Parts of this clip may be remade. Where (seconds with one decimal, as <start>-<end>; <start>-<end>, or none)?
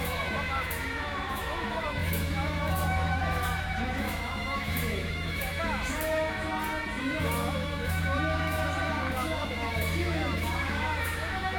0.0-6.5; 7.0-11.6